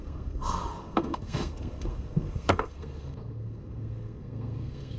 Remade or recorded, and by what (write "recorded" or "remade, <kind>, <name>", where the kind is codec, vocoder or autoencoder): remade, codec, SNAC